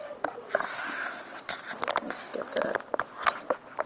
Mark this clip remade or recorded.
recorded